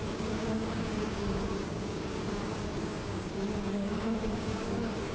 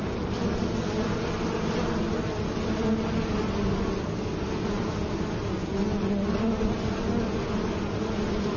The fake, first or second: first